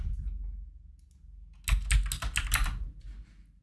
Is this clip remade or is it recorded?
recorded